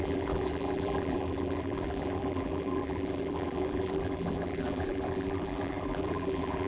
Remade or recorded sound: remade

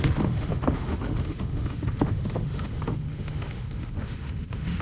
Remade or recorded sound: remade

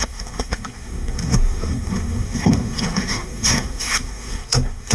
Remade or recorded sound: remade